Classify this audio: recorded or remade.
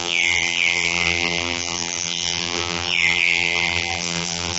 remade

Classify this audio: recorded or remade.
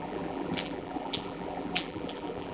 remade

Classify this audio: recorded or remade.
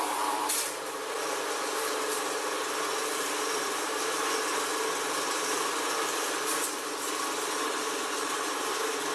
remade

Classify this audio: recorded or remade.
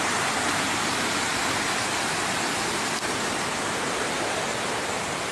recorded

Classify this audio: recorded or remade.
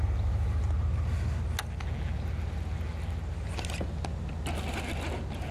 recorded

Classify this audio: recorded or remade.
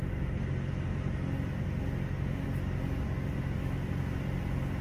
recorded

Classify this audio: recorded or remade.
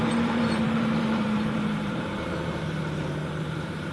remade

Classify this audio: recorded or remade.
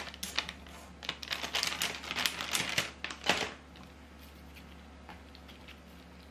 recorded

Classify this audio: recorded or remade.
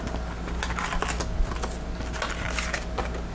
recorded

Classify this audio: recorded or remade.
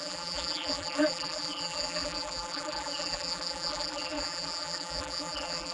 remade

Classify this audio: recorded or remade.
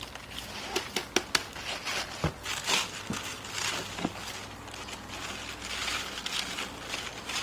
recorded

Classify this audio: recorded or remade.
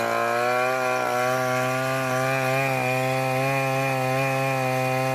recorded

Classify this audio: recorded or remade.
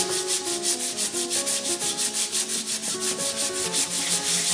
remade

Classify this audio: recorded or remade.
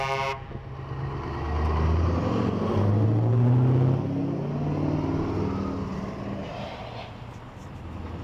recorded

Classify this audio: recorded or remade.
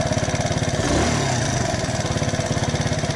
recorded